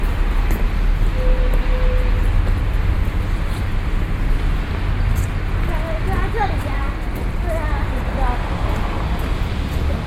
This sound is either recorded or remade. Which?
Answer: recorded